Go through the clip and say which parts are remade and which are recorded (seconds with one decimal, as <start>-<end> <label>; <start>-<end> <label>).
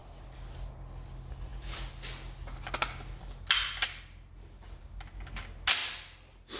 0.0-6.6 recorded